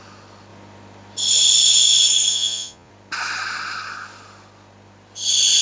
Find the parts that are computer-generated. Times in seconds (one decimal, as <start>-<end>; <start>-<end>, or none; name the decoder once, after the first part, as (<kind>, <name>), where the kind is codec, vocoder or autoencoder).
2.3-2.9 (vocoder, Vocos)